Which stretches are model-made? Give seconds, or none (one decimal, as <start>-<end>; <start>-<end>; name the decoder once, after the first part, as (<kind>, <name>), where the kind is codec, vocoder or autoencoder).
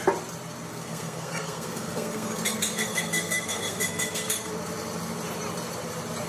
0.7-4.5 (codec, SNAC)